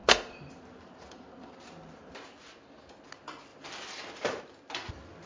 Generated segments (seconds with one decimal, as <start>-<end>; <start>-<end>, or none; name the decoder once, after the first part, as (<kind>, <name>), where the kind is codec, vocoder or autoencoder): none